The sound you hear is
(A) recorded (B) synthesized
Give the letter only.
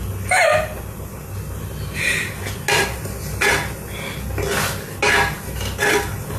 A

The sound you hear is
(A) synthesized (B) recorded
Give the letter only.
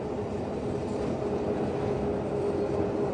B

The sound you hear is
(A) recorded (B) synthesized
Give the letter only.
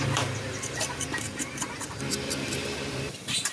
B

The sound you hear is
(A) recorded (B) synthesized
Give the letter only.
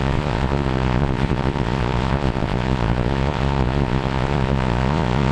B